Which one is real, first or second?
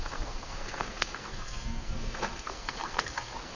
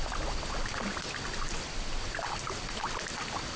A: second